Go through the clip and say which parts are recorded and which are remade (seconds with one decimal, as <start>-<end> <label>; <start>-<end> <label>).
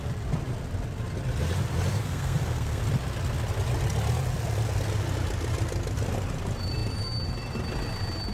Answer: 0.0-1.9 recorded; 1.9-2.8 remade; 2.8-8.3 recorded